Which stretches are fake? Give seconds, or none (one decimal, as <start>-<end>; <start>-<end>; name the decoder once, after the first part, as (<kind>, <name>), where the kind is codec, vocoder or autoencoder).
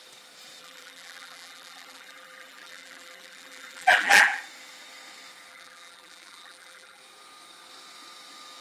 0.6-4.4 (vocoder, BigVGAN v2); 5.5-7.0